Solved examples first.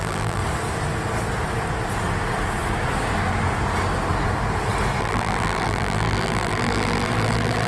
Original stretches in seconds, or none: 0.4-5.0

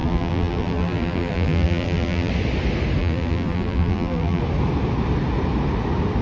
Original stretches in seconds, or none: 2.3-3.0; 4.4-6.2

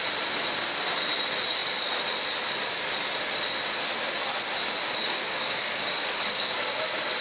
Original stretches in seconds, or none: 0.0-5.0; 6.8-7.2

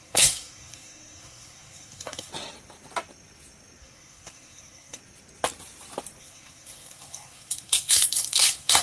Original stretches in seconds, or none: 2.3-3.8; 5.0-6.2